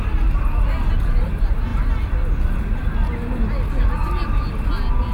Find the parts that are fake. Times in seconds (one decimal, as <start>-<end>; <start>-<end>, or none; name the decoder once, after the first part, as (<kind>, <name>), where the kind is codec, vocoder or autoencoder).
none